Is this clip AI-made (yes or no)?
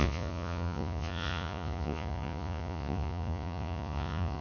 yes